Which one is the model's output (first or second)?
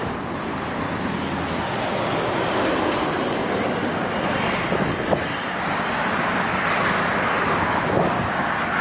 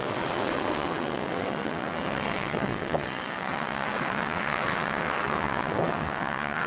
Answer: second